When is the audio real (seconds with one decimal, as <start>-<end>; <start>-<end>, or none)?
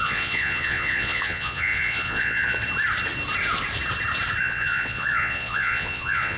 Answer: 2.6-4.4